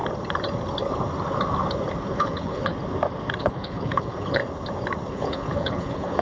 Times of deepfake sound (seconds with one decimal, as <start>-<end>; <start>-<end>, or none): 2.0-2.7; 3.4-4.4; 5.1-6.2